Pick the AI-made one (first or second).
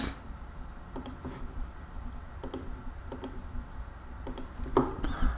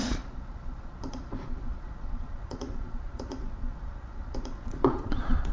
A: second